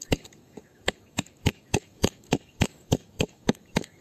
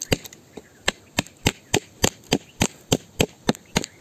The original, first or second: second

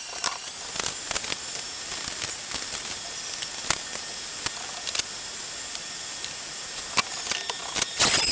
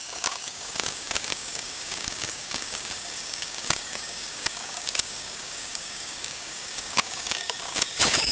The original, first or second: first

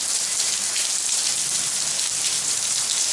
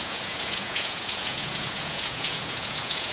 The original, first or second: first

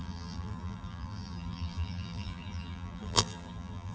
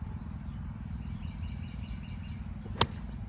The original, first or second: second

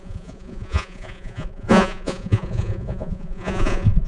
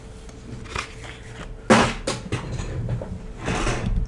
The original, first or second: second